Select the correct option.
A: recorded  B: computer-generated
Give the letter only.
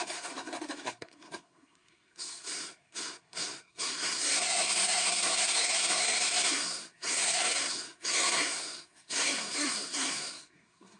B